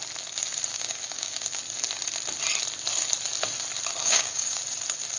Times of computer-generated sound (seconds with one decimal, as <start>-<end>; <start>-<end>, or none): 0.7-1.6; 4.0-4.6